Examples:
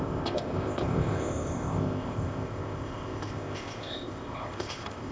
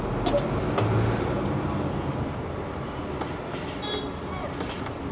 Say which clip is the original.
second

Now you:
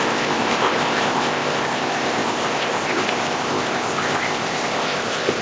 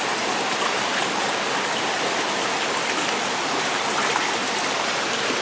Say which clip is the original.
second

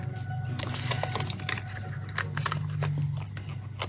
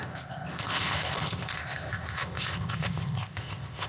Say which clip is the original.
first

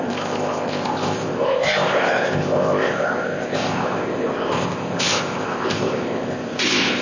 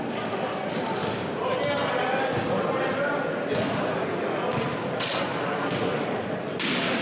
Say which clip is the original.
second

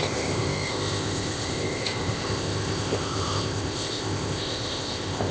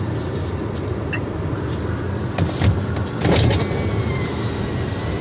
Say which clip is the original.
second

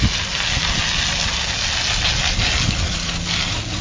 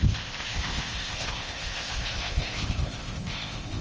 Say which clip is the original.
first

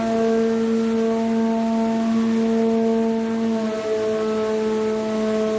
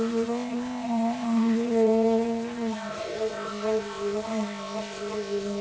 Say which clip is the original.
first